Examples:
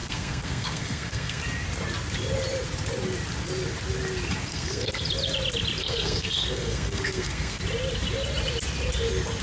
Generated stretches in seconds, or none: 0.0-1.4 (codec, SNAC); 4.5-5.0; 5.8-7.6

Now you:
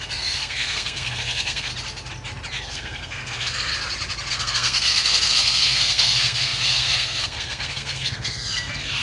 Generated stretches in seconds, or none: 0.0-1.7 (codec, SNAC); 2.6-3.7; 4.3-9.0